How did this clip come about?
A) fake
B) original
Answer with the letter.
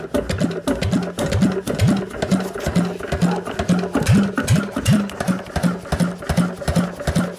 B